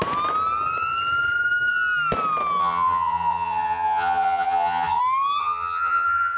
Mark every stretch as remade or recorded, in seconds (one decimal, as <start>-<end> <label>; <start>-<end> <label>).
0.0-2.6 recorded; 2.6-5.0 remade; 5.0-5.4 recorded; 5.4-6.4 remade